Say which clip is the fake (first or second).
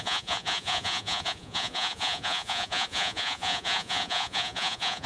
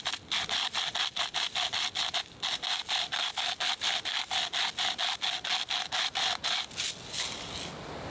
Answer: first